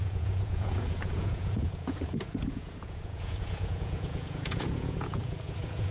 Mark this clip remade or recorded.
remade